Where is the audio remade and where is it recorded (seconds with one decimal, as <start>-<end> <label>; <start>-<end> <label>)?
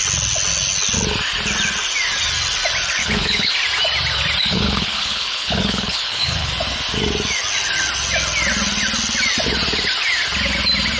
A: 0.0-3.0 recorded; 3.0-3.5 remade; 3.5-4.4 recorded; 4.4-6.5 remade; 6.5-11.0 recorded